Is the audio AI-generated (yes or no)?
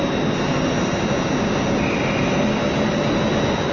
no